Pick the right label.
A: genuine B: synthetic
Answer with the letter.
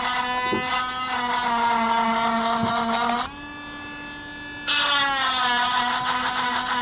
A